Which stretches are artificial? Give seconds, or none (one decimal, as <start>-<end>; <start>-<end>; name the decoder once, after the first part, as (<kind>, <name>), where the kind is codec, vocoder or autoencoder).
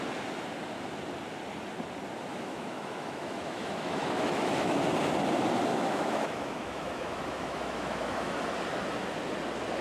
2.3-4.8 (autoencoder, DAC-VAE); 5.7-8.4